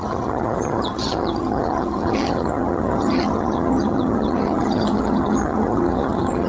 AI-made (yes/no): yes